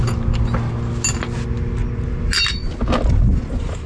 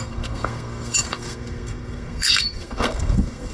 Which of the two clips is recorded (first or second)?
first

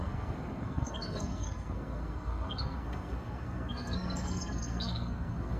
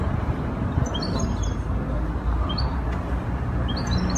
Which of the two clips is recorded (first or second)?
second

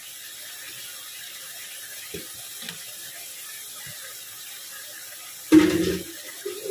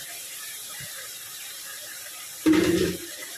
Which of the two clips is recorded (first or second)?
first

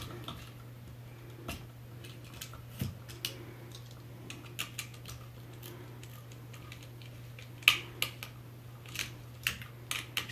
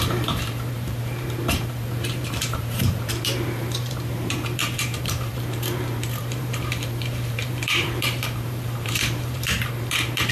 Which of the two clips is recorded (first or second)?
first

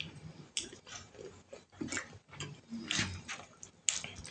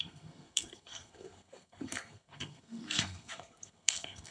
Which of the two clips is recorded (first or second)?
first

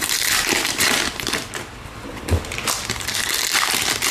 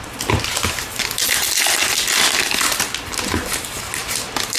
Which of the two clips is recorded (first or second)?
second